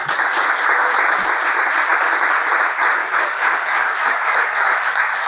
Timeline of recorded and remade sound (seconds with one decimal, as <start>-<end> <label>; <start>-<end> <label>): 0.0-0.5 remade; 0.5-3.0 recorded; 3.0-5.3 remade